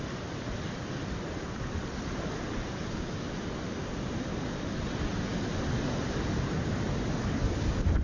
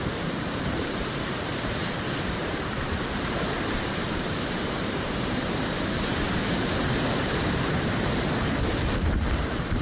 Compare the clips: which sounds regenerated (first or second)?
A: second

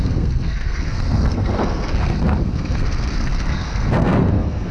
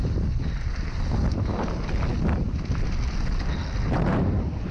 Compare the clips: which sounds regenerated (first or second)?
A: first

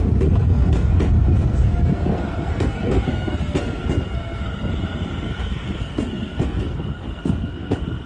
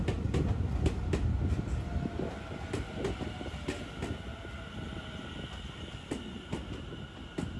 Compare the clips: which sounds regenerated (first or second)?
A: first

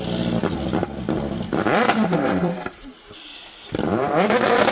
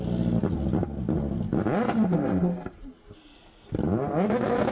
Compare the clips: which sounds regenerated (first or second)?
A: first